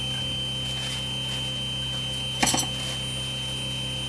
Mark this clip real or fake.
real